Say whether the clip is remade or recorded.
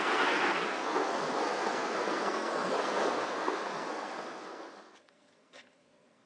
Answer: remade